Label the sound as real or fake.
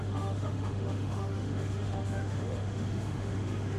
fake